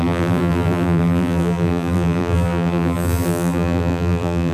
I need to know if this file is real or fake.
fake